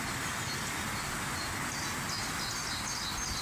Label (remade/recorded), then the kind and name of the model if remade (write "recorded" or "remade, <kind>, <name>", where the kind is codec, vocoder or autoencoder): recorded